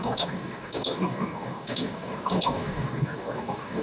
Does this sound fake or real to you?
fake